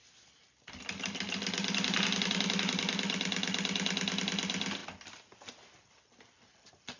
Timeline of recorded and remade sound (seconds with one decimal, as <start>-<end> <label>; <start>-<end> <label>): 0.0-7.0 recorded

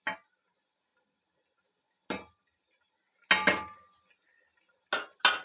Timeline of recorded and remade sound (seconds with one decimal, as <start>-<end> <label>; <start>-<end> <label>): 0.0-5.4 recorded

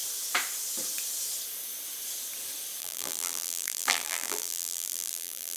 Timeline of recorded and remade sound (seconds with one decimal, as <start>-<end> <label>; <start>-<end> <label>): 0.0-2.8 recorded; 2.8-5.6 remade

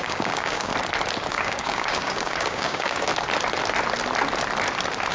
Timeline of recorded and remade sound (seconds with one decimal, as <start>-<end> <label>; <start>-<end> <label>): 0.0-0.7 remade; 0.7-1.3 recorded; 1.3-3.1 remade; 3.1-5.1 recorded

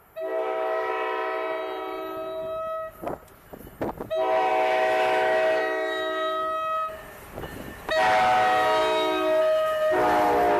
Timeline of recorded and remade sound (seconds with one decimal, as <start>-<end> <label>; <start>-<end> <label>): 0.0-0.4 recorded; 0.4-0.9 remade; 0.9-4.5 recorded; 4.5-5.6 remade; 5.6-10.6 recorded